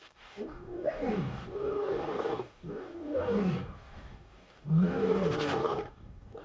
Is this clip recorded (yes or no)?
no